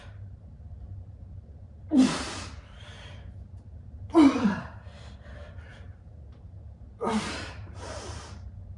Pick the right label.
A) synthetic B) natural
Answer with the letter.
A